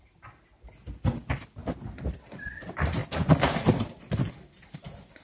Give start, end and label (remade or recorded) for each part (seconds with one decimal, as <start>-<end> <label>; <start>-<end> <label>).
0.0-5.2 recorded